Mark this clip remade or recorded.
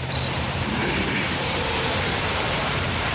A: remade